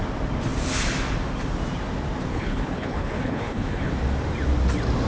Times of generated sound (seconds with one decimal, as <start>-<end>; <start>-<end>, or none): 2.3-3.9